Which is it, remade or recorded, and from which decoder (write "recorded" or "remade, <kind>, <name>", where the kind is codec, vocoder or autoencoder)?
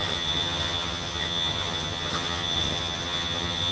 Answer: remade, vocoder, HiFi-GAN